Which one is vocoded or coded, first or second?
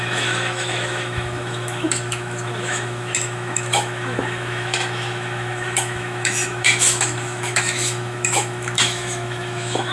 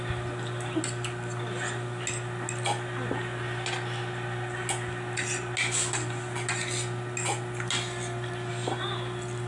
first